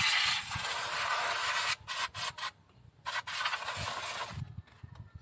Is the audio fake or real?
real